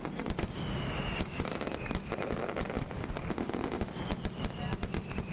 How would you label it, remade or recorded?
recorded